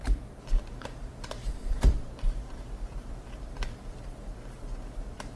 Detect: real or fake fake